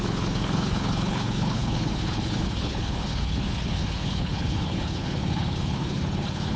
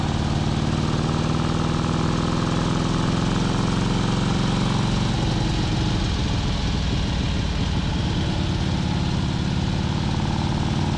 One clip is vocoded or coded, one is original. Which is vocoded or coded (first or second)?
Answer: first